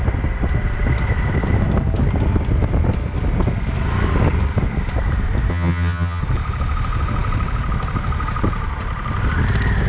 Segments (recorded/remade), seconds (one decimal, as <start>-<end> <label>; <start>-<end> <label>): 0.0-5.5 recorded; 5.5-6.2 remade; 6.2-9.9 recorded